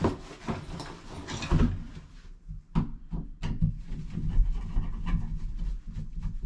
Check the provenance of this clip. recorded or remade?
recorded